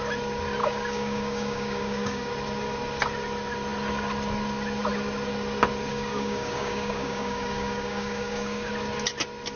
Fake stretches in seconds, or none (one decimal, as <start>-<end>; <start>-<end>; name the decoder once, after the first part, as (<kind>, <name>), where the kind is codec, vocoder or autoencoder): 0.6-2.3 (codec, DAC); 5.9-8.7